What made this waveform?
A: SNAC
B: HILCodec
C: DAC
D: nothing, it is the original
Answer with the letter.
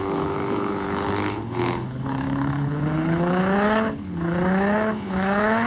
B